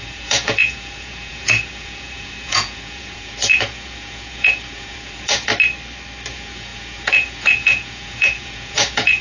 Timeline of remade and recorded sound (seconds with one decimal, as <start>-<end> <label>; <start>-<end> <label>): 0.0-5.5 remade; 5.5-6.3 recorded; 6.3-9.2 remade